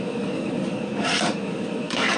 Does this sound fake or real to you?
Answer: fake